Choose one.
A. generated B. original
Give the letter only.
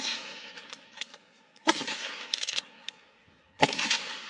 A